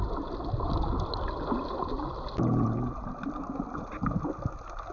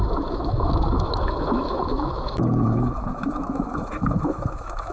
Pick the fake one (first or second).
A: second